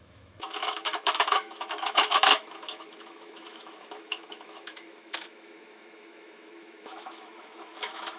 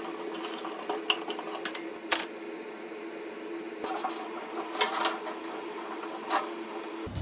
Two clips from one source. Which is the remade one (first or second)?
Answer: first